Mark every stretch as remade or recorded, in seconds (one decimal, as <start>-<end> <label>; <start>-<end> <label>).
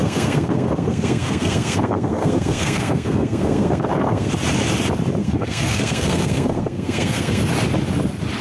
0.0-4.3 remade; 4.3-5.2 recorded; 5.2-7.4 remade; 7.4-8.4 recorded